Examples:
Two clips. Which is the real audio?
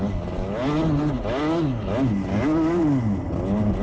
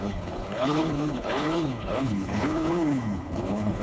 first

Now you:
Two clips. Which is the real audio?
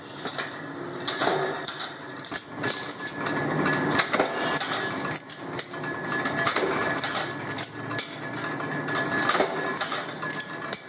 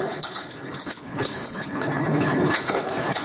first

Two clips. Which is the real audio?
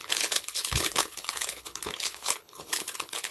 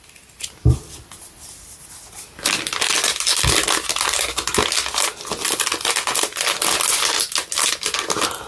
second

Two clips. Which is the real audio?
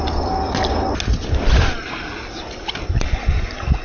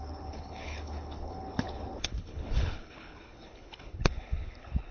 first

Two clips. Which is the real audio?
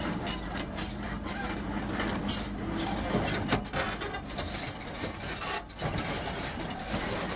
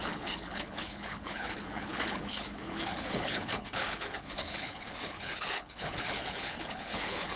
first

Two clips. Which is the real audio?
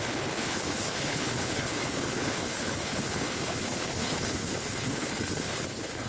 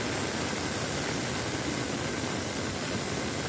second